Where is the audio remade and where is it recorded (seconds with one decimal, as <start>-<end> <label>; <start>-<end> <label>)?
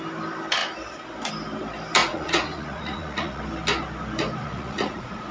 0.0-2.0 recorded; 2.0-3.4 remade; 3.4-4.4 recorded; 4.4-5.3 remade